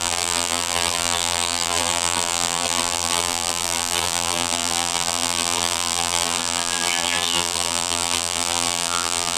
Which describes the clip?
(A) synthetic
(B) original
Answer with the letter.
A